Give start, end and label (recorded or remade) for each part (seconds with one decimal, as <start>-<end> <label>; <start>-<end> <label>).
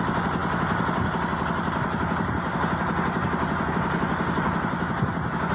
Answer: 0.0-5.5 recorded